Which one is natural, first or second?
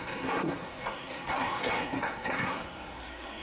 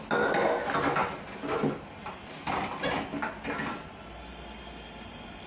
second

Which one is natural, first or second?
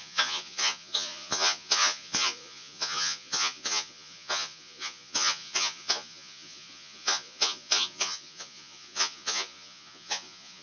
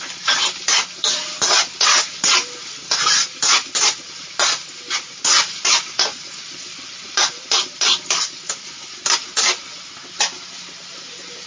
second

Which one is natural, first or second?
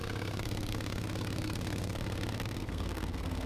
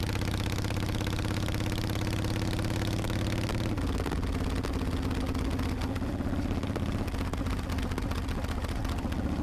second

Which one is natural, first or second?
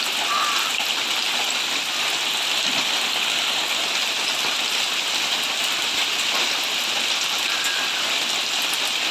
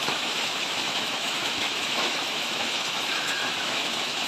first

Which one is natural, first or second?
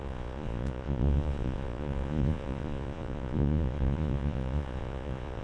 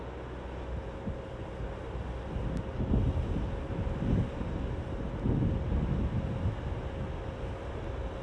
second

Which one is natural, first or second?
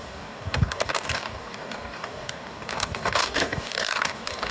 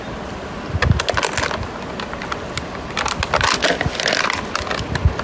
second